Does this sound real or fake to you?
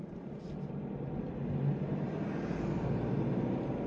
real